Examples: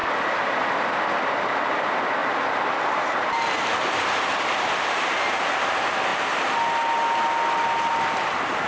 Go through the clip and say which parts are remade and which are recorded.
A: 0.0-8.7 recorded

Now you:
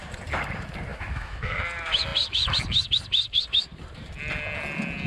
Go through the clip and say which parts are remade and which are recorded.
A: 0.0-0.9 recorded; 0.9-1.6 remade; 1.6-5.1 recorded

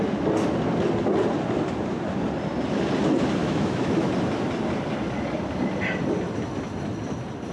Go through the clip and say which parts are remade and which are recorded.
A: 0.0-3.4 recorded; 3.4-4.1 remade; 4.1-7.5 recorded

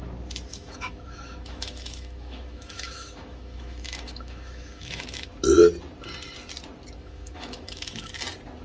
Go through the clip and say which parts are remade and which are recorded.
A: 0.0-0.5 recorded; 0.5-5.3 remade; 5.3-7.0 recorded; 7.0-8.1 remade; 8.1-8.6 recorded

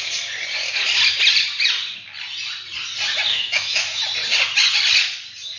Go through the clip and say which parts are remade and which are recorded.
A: 0.0-3.3 recorded; 3.3-4.0 remade; 4.0-5.6 recorded

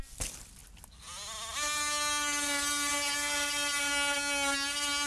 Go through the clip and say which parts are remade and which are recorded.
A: 0.0-5.1 recorded

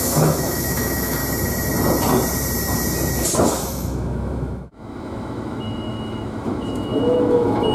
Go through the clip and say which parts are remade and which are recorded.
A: 0.0-1.2 remade; 1.2-3.5 recorded; 3.5-7.7 remade